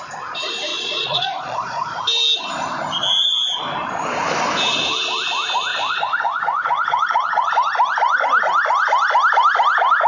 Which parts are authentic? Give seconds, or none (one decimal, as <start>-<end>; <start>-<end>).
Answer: 0.0-0.7; 2.0-5.7; 7.5-10.1